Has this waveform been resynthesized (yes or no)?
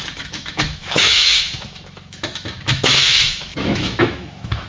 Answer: yes